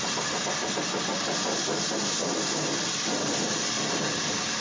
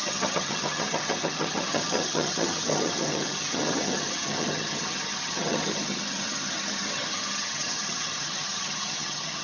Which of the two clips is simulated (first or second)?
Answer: second